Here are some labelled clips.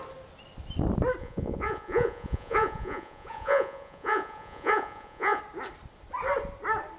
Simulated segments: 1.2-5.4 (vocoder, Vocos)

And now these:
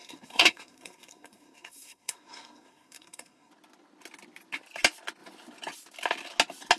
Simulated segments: 0.0-3.5 (codec, SNAC)

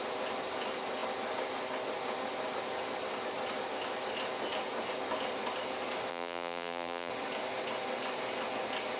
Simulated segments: 6.1-7.1 (vocoder, BigVGAN v2)

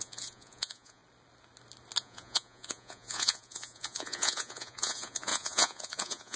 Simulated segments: 0.0-1.0 (vocoder, Vocos); 2.0-6.4

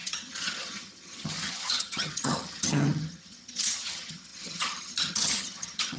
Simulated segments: 0.0-6.0 (vocoder, HiFi-GAN)